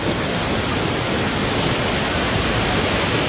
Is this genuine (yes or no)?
yes